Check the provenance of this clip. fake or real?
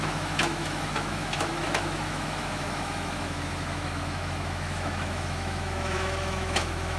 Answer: fake